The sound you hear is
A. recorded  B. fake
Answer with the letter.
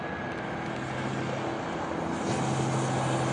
A